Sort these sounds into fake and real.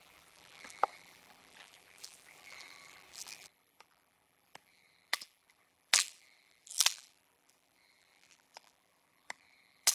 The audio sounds fake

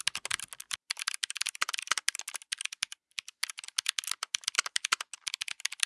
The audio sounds real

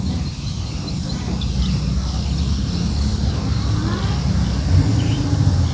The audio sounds real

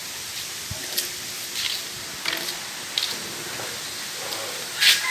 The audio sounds real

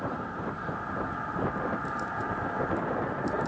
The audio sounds real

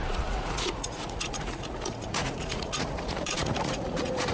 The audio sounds fake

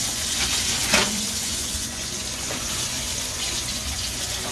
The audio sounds fake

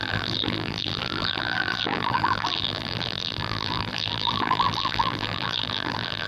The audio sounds fake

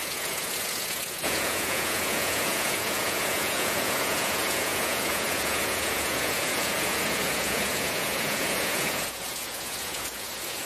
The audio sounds fake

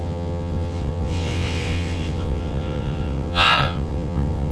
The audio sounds fake